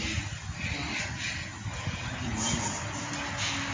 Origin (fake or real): real